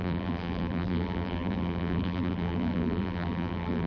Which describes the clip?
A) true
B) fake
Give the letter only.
B